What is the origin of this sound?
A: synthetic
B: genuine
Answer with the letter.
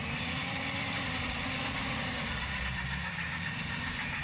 A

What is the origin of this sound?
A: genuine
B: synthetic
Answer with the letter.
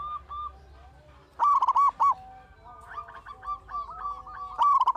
A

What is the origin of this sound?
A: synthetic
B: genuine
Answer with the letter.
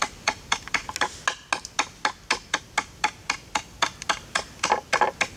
B